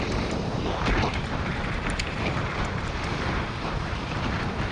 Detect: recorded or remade remade